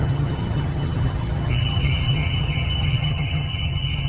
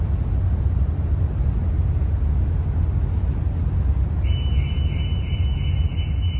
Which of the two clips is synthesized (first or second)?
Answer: first